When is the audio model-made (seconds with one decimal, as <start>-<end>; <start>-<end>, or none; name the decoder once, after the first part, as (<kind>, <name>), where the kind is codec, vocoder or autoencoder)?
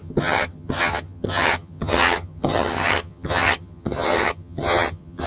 0.0-5.3 (vocoder, HiFi-GAN)